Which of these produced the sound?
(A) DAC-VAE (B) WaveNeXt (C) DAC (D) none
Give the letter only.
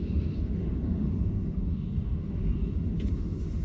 A